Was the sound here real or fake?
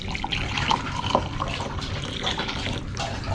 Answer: real